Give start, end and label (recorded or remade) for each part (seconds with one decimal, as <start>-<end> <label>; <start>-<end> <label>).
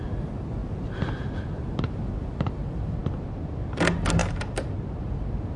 0.0-5.6 recorded